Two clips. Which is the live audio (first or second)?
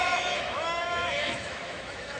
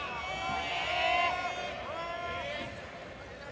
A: second